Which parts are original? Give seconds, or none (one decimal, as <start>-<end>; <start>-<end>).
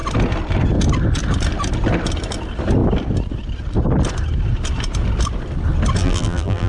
0.0-6.0